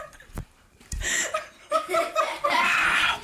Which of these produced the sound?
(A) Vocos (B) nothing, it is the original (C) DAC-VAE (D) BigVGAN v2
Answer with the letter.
D